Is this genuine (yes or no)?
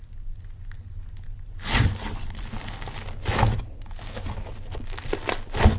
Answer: yes